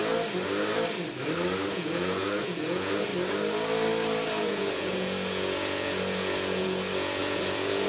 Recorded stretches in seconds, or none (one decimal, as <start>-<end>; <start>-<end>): 0.0-1.7; 3.1-4.4